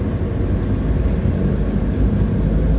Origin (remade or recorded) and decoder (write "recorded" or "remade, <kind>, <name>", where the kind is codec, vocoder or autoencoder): recorded